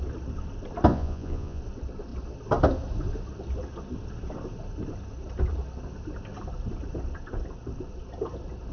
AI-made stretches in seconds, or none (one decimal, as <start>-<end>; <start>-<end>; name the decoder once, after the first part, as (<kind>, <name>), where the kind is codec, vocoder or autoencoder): 0.9-1.6 (vocoder, Vocos)